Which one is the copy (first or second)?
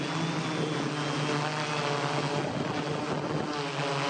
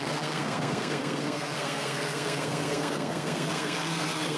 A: second